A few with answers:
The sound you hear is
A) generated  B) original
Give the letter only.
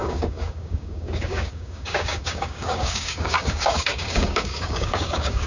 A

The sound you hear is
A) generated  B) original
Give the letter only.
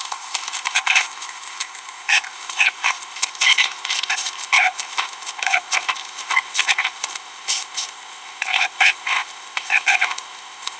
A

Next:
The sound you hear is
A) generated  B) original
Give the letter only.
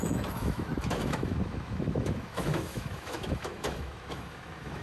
A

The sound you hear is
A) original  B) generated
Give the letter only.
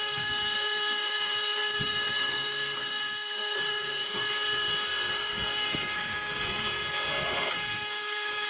B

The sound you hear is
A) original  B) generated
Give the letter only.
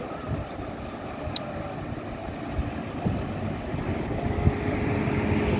A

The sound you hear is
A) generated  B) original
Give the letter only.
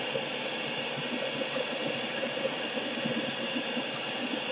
B